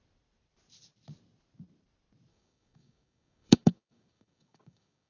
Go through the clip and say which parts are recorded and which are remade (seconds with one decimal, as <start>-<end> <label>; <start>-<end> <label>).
0.0-2.3 recorded; 2.3-5.1 remade

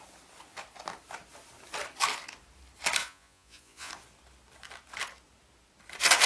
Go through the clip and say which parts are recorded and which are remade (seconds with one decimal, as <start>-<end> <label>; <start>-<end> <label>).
0.0-3.0 recorded; 3.0-3.9 remade; 3.9-6.3 recorded

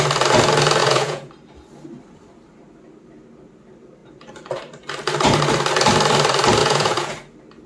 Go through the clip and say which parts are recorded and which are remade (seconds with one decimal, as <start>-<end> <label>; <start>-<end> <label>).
0.0-0.8 recorded; 0.8-1.3 remade; 1.3-6.6 recorded; 6.6-7.1 remade; 7.1-7.7 recorded

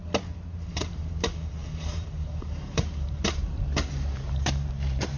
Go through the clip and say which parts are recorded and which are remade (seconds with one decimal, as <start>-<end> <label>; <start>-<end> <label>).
0.0-0.7 recorded; 0.7-5.2 remade

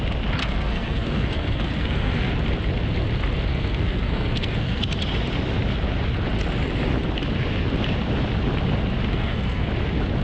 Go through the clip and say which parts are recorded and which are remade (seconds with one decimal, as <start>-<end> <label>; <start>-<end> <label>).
0.0-0.4 recorded; 0.4-2.3 remade; 2.3-3.5 recorded; 3.5-4.8 remade; 4.8-9.1 recorded; 9.1-9.7 remade; 9.7-10.2 recorded